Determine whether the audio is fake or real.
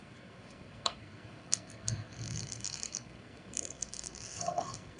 fake